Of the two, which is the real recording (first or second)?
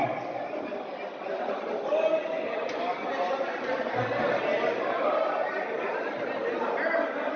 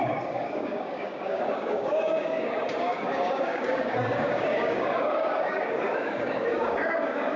first